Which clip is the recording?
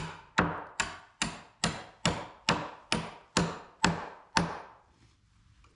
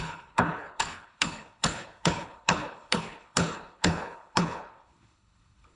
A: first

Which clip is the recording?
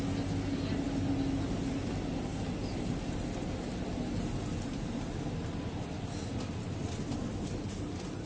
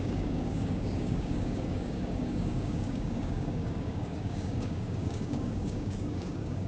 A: first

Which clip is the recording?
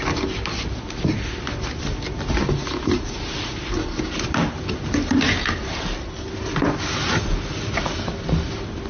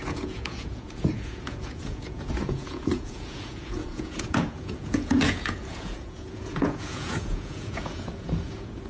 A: first